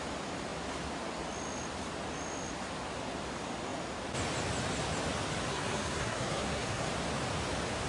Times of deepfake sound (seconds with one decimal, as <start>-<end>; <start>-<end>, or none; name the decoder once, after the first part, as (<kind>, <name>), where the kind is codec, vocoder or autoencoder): 5.5-6.9 (codec, SNAC)